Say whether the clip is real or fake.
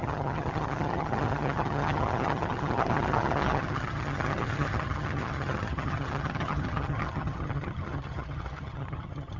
fake